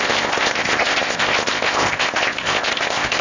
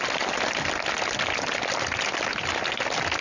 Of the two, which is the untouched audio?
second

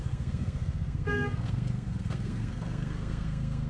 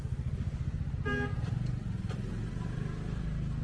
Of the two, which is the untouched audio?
second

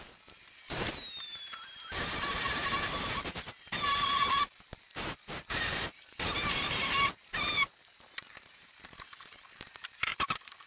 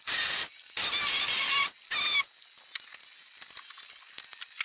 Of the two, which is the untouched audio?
second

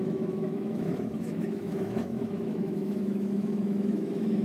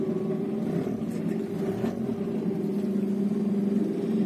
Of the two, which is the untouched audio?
second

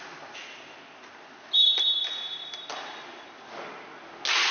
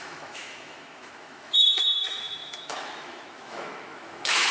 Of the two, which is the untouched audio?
first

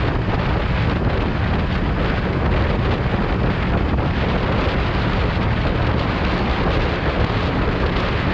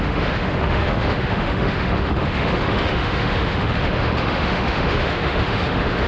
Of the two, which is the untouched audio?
first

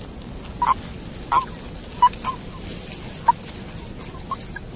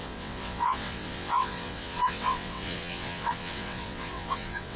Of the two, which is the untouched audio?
first